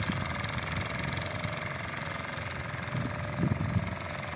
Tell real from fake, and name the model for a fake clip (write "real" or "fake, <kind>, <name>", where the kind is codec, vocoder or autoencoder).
real